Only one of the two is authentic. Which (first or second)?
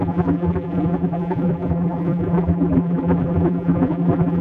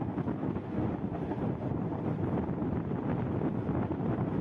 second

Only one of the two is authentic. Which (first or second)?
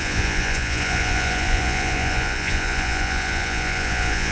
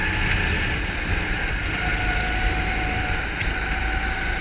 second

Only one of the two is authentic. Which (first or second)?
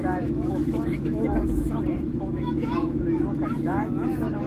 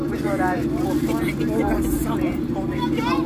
second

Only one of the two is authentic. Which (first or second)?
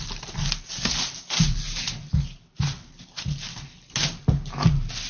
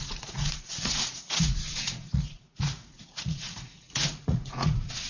first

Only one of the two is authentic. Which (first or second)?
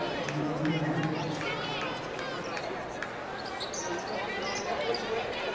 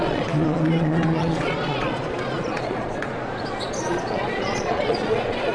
first